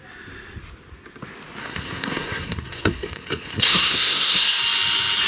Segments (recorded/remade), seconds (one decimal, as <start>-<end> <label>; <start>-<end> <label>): 0.0-1.6 recorded; 1.6-4.6 remade; 4.6-5.3 recorded